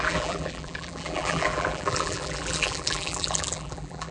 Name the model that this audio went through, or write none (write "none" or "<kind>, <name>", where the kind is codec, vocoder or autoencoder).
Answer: vocoder, BigVGAN v2